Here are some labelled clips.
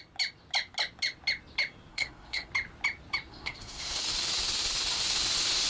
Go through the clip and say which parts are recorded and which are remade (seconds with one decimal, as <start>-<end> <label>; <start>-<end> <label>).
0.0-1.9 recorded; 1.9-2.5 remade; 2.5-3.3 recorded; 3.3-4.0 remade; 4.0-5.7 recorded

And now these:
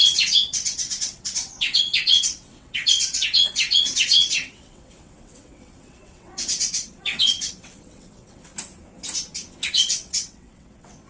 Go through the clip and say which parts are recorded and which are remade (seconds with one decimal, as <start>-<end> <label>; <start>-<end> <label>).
0.0-8.5 remade; 8.5-9.7 recorded; 9.7-11.1 remade

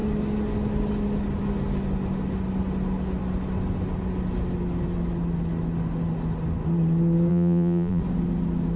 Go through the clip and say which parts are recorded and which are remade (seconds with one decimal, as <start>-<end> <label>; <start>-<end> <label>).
0.0-7.3 recorded; 7.3-8.0 remade; 8.0-8.8 recorded

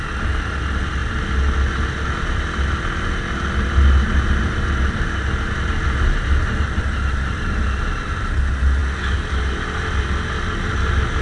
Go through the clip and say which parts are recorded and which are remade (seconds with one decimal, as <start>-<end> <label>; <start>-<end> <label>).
0.0-11.2 recorded

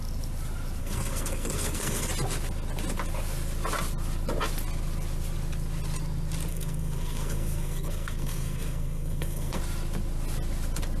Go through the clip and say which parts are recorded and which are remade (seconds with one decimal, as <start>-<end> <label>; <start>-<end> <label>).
0.0-0.8 recorded; 0.8-2.1 remade; 2.1-6.5 recorded; 6.5-9.6 remade; 9.6-11.0 recorded

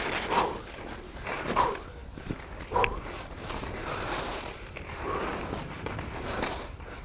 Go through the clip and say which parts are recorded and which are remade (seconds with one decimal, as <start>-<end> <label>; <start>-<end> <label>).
0.0-7.0 recorded